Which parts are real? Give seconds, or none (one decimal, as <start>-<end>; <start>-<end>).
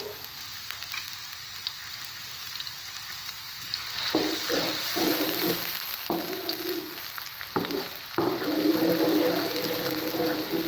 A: 0.0-2.4; 6.3-10.7